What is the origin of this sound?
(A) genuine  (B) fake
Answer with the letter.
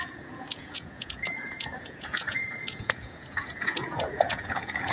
B